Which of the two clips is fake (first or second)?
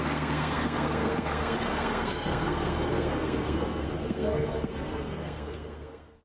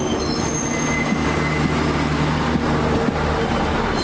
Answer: first